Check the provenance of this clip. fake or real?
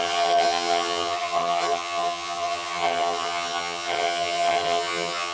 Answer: fake